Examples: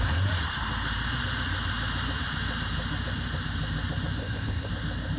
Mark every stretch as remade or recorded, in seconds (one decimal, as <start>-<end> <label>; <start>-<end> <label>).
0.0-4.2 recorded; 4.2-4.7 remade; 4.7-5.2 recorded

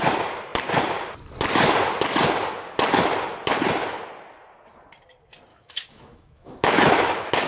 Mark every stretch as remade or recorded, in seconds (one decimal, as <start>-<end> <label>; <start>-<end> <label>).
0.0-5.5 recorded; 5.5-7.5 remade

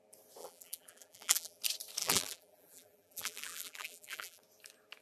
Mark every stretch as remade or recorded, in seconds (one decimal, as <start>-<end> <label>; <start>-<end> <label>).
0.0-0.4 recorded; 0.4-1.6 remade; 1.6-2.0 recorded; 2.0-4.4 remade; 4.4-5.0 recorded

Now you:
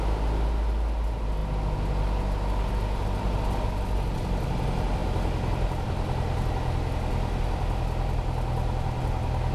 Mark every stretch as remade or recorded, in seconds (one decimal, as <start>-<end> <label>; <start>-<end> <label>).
0.0-9.5 recorded